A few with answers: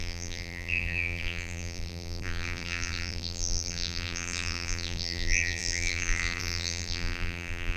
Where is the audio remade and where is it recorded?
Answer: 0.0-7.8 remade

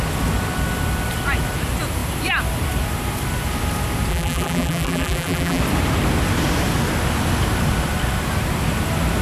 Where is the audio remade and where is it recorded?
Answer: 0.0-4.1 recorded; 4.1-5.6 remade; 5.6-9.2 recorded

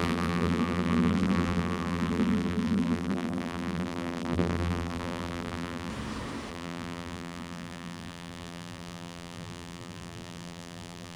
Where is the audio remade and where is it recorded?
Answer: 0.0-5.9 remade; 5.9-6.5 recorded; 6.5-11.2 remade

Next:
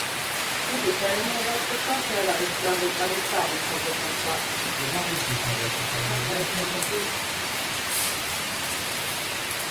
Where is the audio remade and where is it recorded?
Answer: 0.0-4.2 remade; 4.2-5.4 recorded; 5.4-9.7 remade

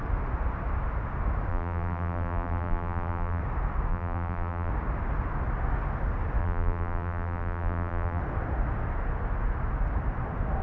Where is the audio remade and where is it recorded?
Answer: 0.0-1.5 recorded; 1.5-3.4 remade; 3.4-3.9 recorded; 3.9-4.7 remade; 4.7-6.4 recorded; 6.4-8.2 remade; 8.2-10.6 recorded

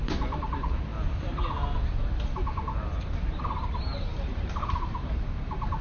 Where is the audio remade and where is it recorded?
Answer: 0.0-4.1 recorded; 4.1-5.1 remade; 5.1-5.8 recorded

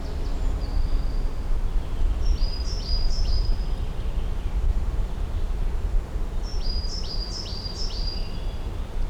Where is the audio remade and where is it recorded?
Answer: 0.0-6.5 recorded; 6.5-7.1 remade; 7.1-9.1 recorded